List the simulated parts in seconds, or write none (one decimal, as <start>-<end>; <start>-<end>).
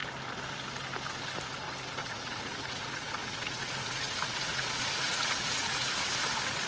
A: 2.0-6.0